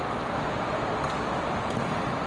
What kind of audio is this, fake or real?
real